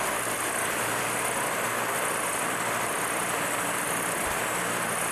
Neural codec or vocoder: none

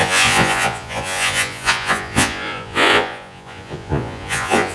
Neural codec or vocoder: vocoder, Vocos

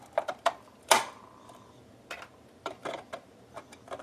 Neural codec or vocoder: vocoder, BigVGAN v2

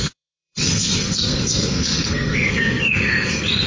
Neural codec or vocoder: codec, SNAC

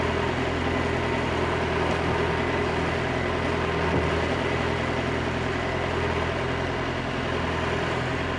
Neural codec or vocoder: none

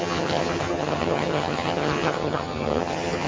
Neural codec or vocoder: vocoder, HiFi-GAN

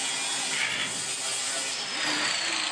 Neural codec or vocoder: none